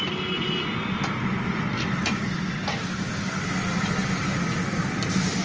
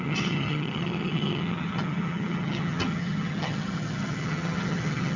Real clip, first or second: first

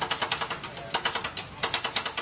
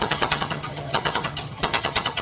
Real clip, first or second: first